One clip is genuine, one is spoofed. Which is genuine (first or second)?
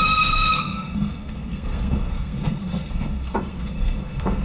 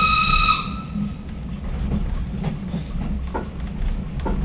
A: second